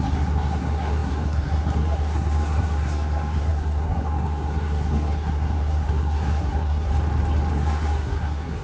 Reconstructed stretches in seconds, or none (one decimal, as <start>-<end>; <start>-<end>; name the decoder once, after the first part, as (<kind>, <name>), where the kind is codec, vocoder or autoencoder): 0.0-6.9 (codec, SNAC); 7.5-8.6